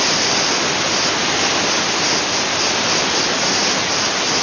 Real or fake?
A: real